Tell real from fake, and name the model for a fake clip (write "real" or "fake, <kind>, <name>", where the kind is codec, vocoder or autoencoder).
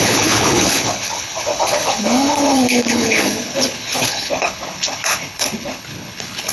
fake, codec, HILCodec